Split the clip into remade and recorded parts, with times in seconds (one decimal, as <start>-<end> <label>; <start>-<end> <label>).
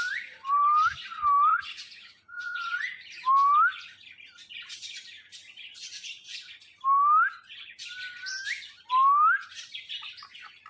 0.0-1.5 recorded; 1.5-2.8 remade; 2.8-10.7 recorded